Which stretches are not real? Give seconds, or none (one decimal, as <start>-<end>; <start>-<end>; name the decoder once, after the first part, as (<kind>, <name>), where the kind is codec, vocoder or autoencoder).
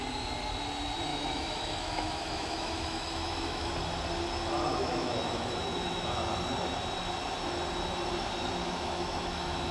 1.1-3.7 (autoencoder, DAC-VAE); 4.7-6.3; 8.6-9.7